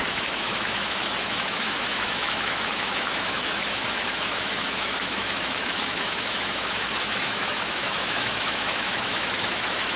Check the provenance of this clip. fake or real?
fake